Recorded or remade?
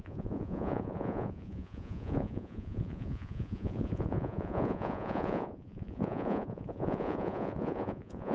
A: remade